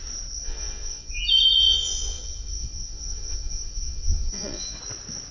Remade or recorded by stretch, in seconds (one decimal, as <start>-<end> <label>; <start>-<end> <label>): 0.0-0.4 recorded; 0.4-1.1 remade; 1.1-1.6 recorded; 1.6-4.8 remade; 4.8-5.3 recorded